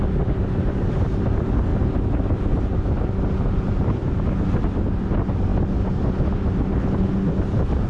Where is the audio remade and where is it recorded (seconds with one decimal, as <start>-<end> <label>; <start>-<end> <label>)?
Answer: 0.0-7.9 recorded